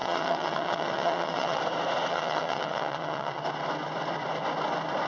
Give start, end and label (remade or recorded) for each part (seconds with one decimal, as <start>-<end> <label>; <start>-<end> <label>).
0.0-1.6 remade; 1.6-2.1 recorded; 2.1-3.4 remade; 3.4-5.1 recorded